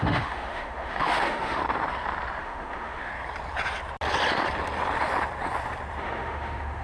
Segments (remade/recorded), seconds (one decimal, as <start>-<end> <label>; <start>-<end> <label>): 0.0-1.6 remade; 1.6-2.4 recorded; 2.4-3.1 remade; 3.1-6.0 recorded; 6.0-6.8 remade